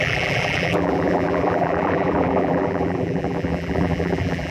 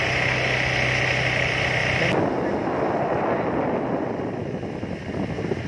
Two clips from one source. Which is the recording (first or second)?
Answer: second